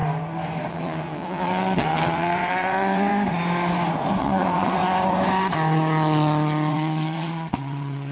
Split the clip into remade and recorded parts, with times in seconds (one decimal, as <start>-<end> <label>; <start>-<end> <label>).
0.0-0.7 recorded; 0.7-3.1 remade; 3.1-4.2 recorded; 4.2-4.8 remade; 4.8-6.7 recorded; 6.7-8.1 remade